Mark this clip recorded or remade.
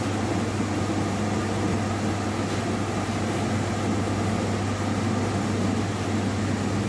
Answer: recorded